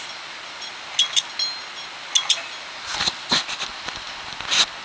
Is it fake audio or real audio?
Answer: real